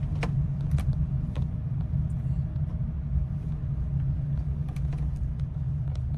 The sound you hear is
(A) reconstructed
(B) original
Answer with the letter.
B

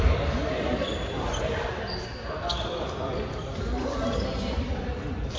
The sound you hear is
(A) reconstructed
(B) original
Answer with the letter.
A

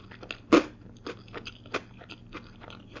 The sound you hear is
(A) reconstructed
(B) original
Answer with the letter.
B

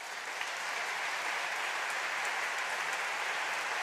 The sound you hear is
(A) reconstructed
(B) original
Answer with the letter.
B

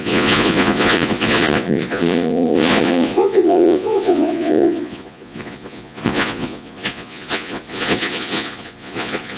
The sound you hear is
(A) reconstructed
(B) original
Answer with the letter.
A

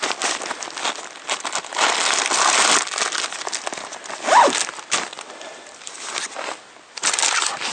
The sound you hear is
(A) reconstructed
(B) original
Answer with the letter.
B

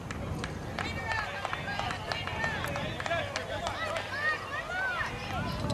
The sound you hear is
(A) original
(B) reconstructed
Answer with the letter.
A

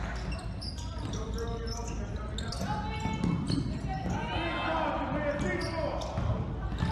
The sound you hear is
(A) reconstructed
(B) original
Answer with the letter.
B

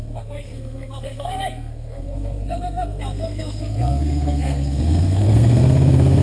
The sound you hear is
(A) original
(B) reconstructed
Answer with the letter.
B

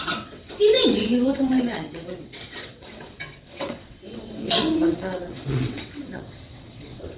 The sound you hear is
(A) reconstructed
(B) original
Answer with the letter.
A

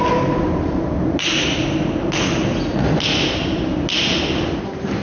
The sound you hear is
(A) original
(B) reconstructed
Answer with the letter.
A